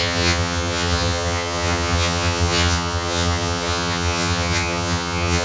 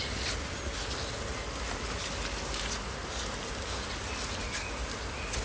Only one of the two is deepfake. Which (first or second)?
first